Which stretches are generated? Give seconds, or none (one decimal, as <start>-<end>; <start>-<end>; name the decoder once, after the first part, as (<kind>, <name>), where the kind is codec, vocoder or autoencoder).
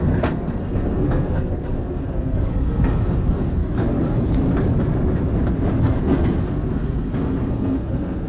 0.0-3.6 (codec, SNAC); 5.8-8.3